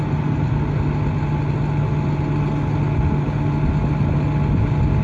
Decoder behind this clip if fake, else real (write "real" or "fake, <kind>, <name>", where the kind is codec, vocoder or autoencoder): real